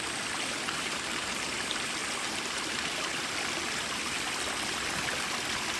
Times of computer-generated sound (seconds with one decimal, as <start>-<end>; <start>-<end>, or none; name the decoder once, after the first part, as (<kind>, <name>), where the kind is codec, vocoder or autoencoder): 0.0-5.8 (vocoder, BigVGAN v2)